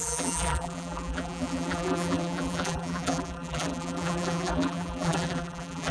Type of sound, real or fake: fake